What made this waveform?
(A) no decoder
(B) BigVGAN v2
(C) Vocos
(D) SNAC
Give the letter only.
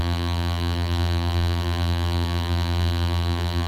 B